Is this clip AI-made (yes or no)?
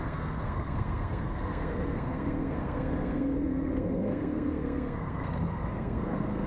yes